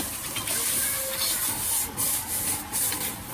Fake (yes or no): no